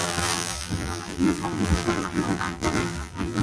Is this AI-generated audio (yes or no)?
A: yes